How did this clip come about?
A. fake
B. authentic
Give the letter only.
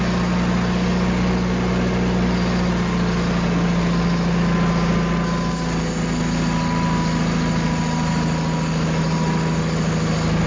B